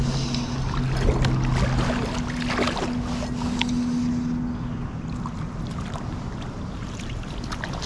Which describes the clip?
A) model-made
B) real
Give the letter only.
B